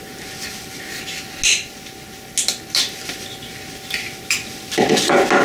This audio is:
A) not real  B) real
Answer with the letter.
B